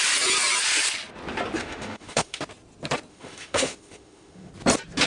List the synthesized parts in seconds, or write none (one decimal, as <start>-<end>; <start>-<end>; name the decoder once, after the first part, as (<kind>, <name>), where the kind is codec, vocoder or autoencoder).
1.6-2.4 (autoencoder, DAC-VAE); 3.1-4.5